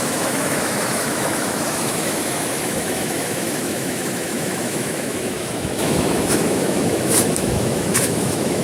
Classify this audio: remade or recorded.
remade